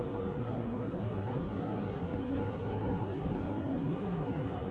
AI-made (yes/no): yes